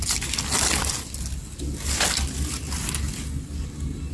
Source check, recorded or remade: recorded